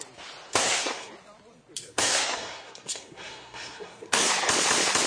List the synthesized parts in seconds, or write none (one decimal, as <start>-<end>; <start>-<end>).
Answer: 0.5-1.1; 1.8-4.3